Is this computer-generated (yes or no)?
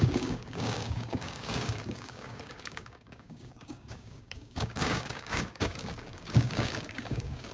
yes